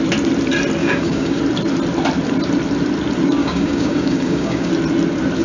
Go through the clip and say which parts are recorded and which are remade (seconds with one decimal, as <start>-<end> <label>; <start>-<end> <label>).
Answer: 0.0-0.8 recorded; 0.8-1.4 remade; 1.4-3.4 recorded; 3.4-4.7 remade; 4.7-5.4 recorded